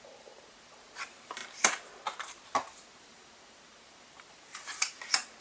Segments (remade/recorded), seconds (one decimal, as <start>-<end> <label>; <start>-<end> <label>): 0.0-1.4 remade; 1.4-2.9 recorded; 2.9-5.4 remade